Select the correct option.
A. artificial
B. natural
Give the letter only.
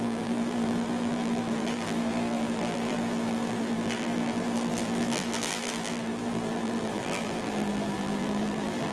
A